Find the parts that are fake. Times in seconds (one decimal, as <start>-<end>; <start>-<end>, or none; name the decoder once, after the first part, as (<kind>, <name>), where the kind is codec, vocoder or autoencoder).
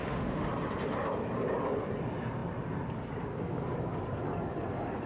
0.0-0.5 (autoencoder, DAC-VAE)